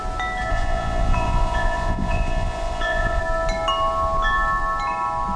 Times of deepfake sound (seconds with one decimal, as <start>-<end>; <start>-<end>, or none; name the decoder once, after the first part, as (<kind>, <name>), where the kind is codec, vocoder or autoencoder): 0.5-3.2 (vocoder, Vocos)